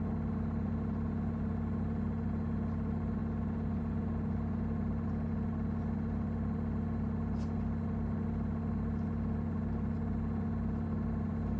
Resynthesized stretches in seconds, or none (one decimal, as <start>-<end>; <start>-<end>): none